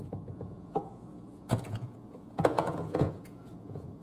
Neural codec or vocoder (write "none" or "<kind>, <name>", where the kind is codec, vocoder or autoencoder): vocoder, Vocos